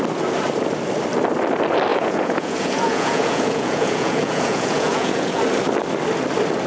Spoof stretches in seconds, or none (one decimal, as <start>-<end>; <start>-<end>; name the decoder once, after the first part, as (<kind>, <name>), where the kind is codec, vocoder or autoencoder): 1.9-5.4 (vocoder, Vocos)